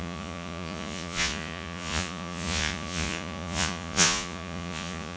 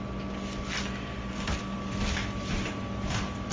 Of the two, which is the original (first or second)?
second